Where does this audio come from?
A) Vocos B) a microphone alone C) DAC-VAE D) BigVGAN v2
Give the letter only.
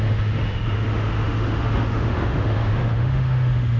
C